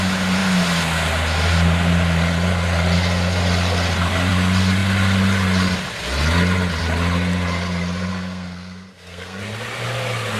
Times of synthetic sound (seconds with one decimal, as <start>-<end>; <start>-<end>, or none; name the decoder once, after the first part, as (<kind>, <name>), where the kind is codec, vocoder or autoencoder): 8.1-9.4 (codec, SNAC)